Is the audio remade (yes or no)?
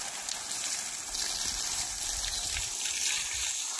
no